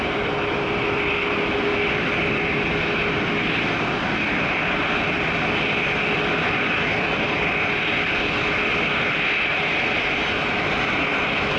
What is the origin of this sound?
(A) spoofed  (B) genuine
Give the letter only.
B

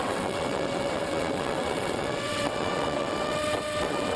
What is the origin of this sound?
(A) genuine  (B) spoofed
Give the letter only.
B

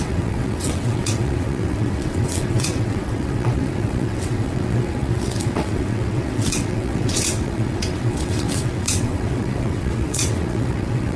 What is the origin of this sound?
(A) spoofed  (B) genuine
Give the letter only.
A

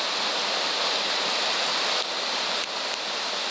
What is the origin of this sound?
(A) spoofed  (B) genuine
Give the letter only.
B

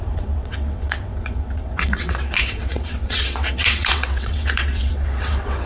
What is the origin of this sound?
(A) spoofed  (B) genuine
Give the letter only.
A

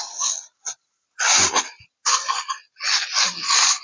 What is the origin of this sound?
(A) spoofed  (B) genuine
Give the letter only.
B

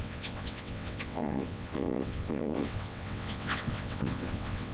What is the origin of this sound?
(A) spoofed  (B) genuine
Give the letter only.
A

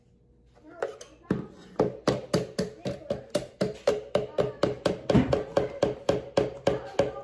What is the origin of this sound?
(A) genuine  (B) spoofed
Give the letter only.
A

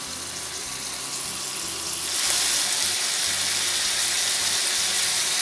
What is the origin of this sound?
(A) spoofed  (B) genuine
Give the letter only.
B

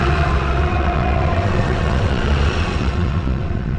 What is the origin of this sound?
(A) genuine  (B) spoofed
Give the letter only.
B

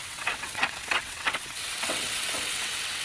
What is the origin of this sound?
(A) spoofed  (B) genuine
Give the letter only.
A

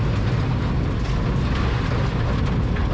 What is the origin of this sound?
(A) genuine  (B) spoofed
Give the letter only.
A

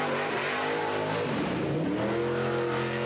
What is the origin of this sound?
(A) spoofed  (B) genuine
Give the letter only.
B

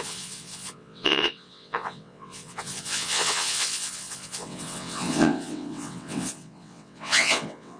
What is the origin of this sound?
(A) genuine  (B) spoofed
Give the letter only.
B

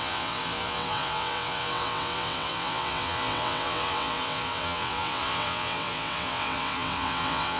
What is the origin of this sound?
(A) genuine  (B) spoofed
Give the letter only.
B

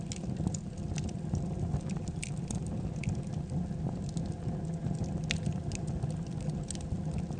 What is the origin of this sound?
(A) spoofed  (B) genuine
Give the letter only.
B